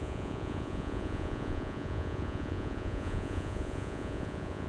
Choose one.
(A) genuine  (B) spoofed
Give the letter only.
B